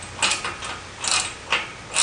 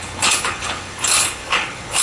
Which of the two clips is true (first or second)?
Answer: first